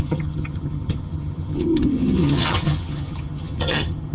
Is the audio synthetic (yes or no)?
yes